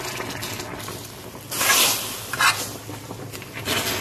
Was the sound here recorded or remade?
recorded